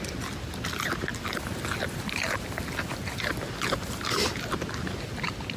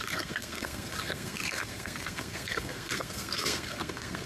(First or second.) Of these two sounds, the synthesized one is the second